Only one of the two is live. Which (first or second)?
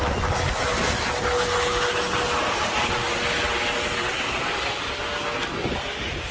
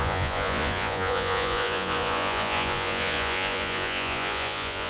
first